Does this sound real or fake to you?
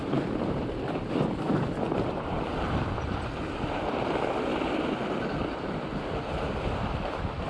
fake